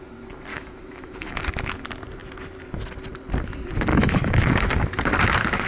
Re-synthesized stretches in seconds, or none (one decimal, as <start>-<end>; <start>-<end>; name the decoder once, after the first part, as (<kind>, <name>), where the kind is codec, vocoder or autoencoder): 0.5-1.4 (autoencoder, DAC-VAE); 3.9-4.7